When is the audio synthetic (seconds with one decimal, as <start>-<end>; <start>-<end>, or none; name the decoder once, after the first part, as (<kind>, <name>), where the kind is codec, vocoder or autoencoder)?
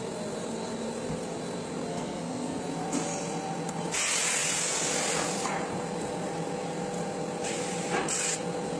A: 1.9-2.6 (codec, SNAC)